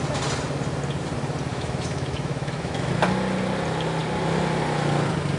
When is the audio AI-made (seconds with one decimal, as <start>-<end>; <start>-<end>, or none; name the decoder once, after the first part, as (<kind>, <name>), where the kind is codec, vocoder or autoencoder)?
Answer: 1.5-2.9 (autoencoder, DAC-VAE)